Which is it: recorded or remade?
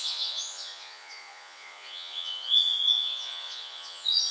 remade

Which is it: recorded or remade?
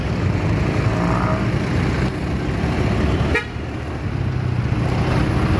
recorded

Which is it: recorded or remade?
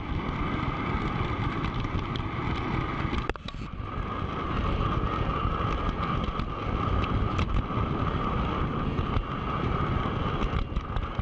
recorded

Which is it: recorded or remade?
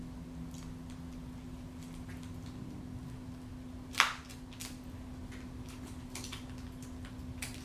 recorded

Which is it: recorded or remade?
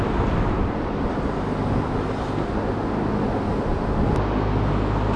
recorded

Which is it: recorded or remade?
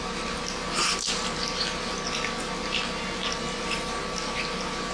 recorded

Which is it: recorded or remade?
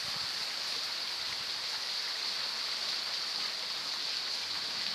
recorded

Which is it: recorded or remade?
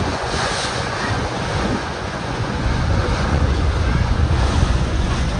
remade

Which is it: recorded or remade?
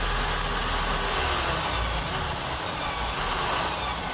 recorded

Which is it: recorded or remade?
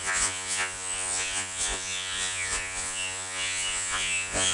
remade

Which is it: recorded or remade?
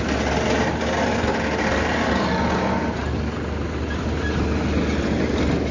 recorded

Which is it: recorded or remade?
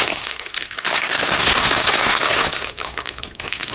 remade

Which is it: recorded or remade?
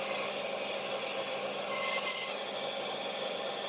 recorded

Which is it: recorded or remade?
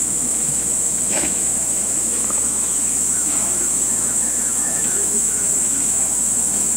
remade